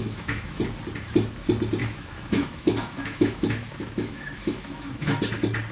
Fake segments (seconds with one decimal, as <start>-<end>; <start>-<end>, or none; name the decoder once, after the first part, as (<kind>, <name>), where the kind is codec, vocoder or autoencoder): 0.0-0.6 (autoencoder, DAC-VAE); 1.8-5.2